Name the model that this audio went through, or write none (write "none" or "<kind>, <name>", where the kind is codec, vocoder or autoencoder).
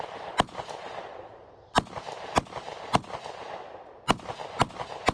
none